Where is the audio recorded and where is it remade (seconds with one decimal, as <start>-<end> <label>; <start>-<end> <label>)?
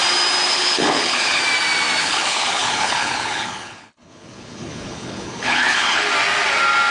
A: 0.0-0.5 recorded; 0.5-1.4 remade; 1.4-2.0 recorded; 2.0-6.1 remade; 6.1-6.9 recorded